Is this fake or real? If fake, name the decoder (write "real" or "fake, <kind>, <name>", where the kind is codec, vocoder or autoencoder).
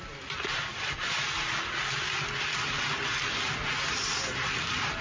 real